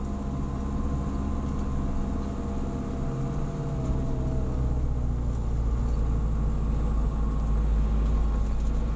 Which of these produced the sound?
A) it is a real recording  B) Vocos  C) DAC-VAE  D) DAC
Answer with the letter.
A